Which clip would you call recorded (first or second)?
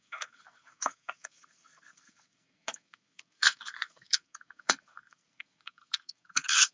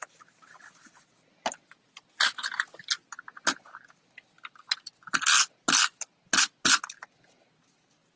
second